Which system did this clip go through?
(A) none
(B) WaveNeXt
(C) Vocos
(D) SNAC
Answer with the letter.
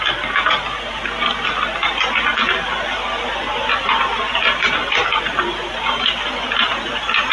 A